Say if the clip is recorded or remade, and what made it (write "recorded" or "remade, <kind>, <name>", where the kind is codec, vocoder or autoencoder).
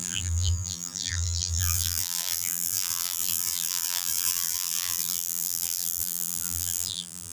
remade, vocoder, BigVGAN v2